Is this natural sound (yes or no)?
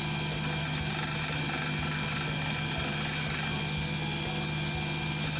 yes